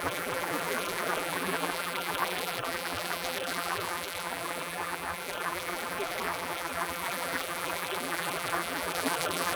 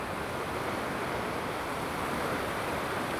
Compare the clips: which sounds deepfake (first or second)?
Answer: first